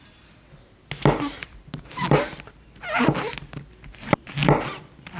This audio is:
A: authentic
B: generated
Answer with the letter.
A